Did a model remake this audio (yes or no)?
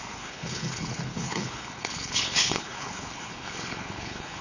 yes